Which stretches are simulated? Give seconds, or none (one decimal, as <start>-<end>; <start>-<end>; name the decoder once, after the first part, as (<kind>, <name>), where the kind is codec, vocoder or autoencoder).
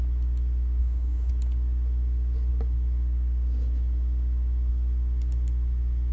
0.8-1.3 (codec, DAC)